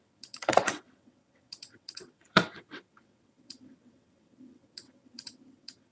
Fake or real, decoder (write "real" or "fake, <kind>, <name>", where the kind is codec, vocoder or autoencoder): fake, vocoder, WaveNeXt